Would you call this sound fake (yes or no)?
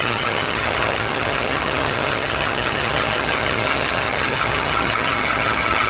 yes